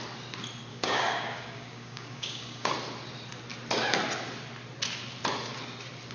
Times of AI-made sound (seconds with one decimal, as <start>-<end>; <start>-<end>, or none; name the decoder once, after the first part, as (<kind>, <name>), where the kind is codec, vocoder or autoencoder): 0.7-2.7 (codec, DAC)